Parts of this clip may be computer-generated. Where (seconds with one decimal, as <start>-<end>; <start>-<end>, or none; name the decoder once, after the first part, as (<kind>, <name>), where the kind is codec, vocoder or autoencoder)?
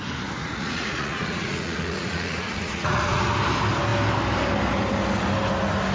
0.4-3.2 (vocoder, Vocos)